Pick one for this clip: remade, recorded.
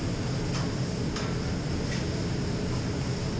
recorded